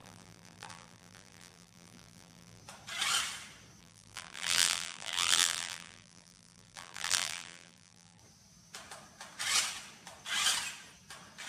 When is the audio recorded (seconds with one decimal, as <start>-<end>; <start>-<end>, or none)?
2.6-3.8; 8.2-11.5